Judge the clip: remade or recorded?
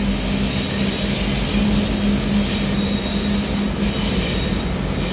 recorded